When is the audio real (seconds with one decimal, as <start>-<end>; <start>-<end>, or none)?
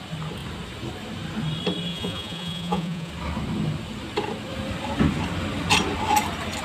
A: 0.0-1.9; 3.1-6.6